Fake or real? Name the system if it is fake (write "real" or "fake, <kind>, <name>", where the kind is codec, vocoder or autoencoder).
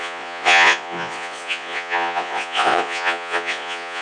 fake, vocoder, Vocos